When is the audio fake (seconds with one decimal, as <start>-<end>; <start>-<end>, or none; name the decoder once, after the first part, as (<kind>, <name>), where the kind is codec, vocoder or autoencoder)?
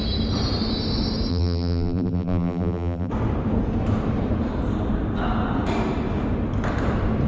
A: 1.3-3.1 (vocoder, BigVGAN v2)